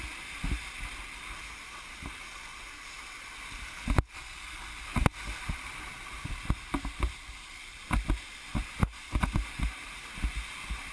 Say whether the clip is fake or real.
real